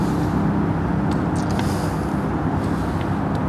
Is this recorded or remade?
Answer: recorded